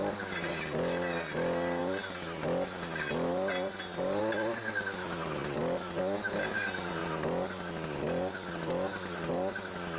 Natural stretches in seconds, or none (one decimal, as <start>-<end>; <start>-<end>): 0.0-10.0